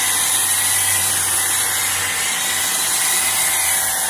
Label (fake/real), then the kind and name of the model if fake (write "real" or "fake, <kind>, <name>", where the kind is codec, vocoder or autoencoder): real